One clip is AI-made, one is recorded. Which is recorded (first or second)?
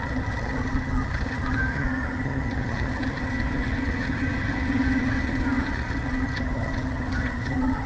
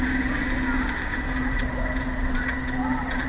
second